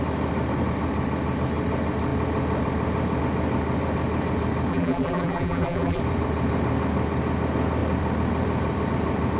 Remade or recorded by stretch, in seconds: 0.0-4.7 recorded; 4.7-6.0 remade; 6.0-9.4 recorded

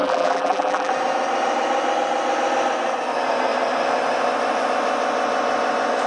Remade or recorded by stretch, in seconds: 0.0-0.9 remade; 0.9-6.1 recorded

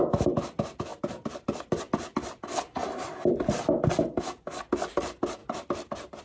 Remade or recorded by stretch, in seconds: 0.0-0.9 recorded; 0.9-1.8 remade; 1.8-5.4 recorded; 5.4-6.2 remade

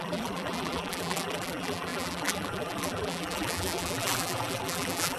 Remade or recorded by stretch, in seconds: 0.0-5.2 remade

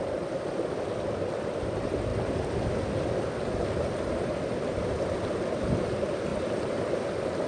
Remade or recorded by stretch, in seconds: 0.0-7.5 remade

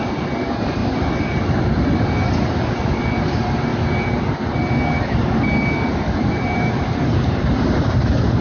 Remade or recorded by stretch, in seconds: 0.0-0.8 remade; 0.8-3.3 recorded; 3.3-3.7 remade; 3.7-6.3 recorded; 6.3-8.4 remade

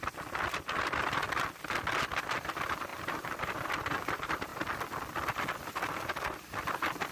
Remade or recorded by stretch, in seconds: 0.0-2.9 recorded; 2.9-3.7 remade; 3.7-7.1 recorded